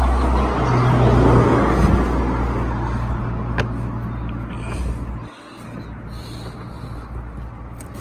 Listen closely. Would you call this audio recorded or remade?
recorded